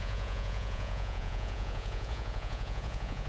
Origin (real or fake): fake